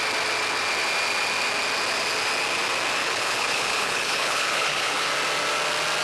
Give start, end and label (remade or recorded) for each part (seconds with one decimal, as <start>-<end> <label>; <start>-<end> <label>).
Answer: 0.0-3.0 recorded; 3.0-5.1 remade; 5.1-6.0 recorded